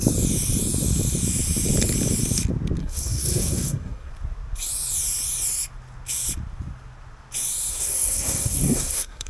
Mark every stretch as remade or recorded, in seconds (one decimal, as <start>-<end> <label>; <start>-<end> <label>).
0.0-2.8 recorded; 2.8-4.1 remade; 4.1-7.7 recorded; 7.7-9.3 remade